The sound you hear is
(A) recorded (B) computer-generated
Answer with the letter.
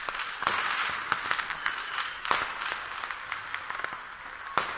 A